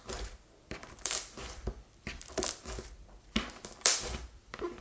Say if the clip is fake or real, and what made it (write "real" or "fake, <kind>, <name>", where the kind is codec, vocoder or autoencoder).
fake, vocoder, BigVGAN v2